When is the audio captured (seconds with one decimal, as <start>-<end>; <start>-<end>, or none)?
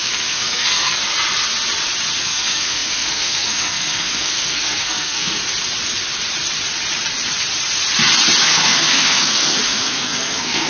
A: 1.0-2.2; 5.4-8.4